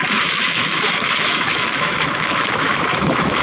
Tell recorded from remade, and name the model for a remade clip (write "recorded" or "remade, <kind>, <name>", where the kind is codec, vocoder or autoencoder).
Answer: remade, autoencoder, DAC-VAE